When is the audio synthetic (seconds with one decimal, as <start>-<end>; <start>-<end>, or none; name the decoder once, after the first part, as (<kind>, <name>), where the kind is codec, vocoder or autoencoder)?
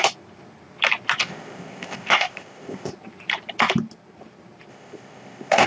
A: 1.2-2.9 (codec, ZipCodec); 4.7-5.7